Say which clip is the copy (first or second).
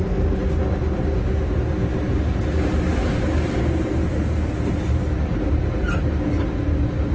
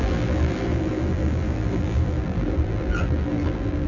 second